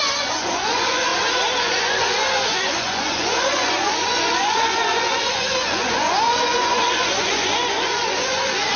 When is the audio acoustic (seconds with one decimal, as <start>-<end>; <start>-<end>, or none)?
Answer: 1.1-1.6